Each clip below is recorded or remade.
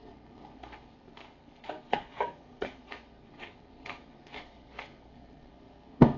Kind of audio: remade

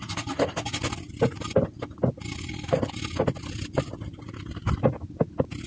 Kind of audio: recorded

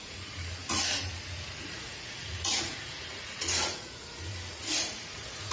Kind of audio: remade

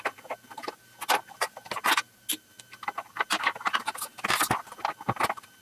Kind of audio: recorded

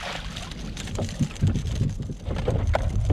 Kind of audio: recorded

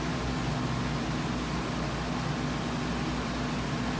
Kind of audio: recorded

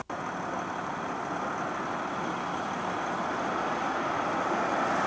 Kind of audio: recorded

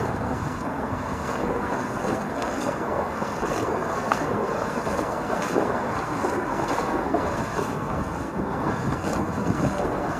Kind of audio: remade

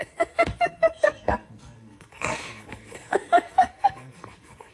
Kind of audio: remade